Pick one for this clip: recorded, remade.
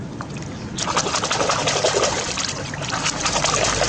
recorded